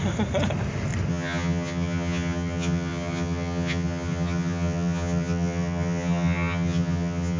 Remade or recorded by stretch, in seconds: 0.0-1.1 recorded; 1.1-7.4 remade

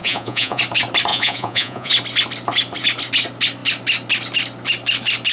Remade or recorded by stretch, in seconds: 0.0-0.6 remade; 0.6-1.1 recorded; 1.1-1.9 remade; 1.9-5.3 recorded

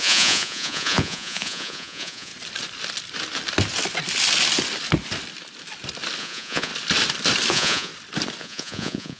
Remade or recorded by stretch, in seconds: 0.0-2.3 remade; 2.3-6.2 recorded; 6.2-6.7 remade; 6.7-7.5 recorded; 7.5-7.9 remade; 7.9-8.4 recorded; 8.4-9.2 remade

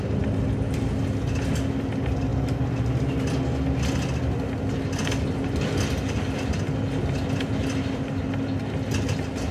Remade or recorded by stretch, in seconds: 0.0-9.5 recorded

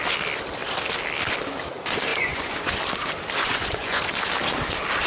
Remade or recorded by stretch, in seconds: 0.0-2.1 recorded; 2.1-2.7 remade; 2.7-3.4 recorded; 3.4-4.0 remade; 4.0-5.1 recorded

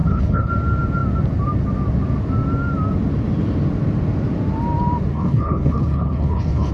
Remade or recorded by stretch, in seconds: 0.0-0.5 remade; 0.5-5.1 recorded; 5.1-6.7 remade

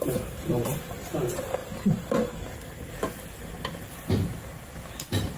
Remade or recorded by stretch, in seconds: 0.0-5.4 recorded

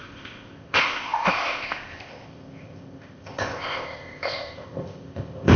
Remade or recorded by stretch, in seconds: 0.0-5.6 remade